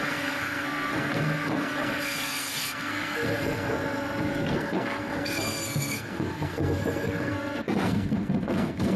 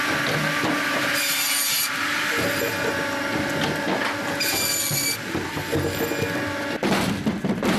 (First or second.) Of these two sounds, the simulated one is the first